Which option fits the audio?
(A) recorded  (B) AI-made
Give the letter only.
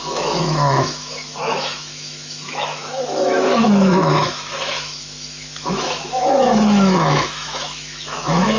B